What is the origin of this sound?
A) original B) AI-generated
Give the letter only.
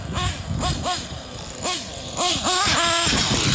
A